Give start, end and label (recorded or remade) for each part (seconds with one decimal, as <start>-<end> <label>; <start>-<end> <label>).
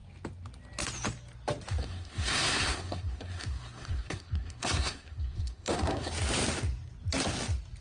0.0-1.8 recorded; 1.8-6.1 remade; 6.1-7.8 recorded